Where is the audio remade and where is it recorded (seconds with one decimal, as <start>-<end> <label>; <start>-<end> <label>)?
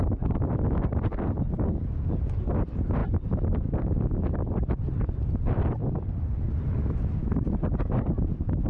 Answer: 0.0-3.0 recorded; 3.0-6.6 remade; 6.6-8.7 recorded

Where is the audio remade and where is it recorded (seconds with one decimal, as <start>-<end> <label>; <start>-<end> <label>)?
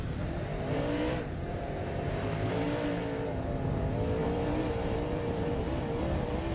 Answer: 0.0-0.5 recorded; 0.5-3.4 remade; 3.4-4.2 recorded; 4.2-5.6 remade; 5.6-6.5 recorded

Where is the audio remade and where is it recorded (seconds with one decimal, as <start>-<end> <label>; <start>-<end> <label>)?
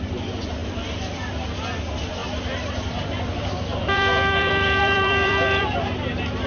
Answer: 0.0-0.6 remade; 0.6-1.8 recorded; 1.8-6.5 remade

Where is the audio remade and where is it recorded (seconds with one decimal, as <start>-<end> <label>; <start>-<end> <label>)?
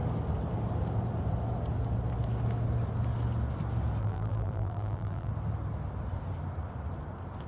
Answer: 0.0-4.0 recorded; 4.0-5.3 remade; 5.3-7.5 recorded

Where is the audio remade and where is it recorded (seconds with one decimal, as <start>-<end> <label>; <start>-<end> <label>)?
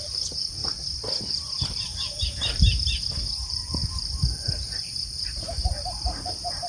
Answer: 0.0-0.6 remade; 0.6-1.2 recorded; 1.2-6.7 remade